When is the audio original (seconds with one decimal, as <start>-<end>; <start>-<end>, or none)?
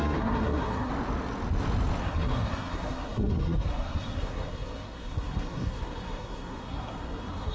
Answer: 0.9-2.0